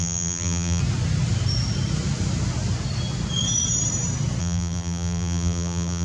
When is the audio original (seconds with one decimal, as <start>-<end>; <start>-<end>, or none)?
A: 0.8-4.4